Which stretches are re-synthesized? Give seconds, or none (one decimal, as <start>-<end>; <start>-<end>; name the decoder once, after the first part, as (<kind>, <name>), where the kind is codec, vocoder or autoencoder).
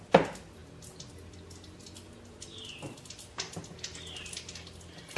none